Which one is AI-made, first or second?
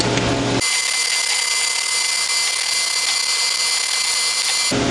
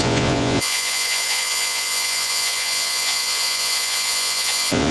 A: second